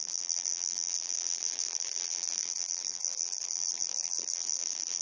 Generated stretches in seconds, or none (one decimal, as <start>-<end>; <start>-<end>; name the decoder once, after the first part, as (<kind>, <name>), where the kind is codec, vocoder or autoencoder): 0.0-5.0 (vocoder, BigVGAN v2)